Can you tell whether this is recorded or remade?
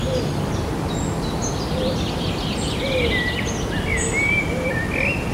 recorded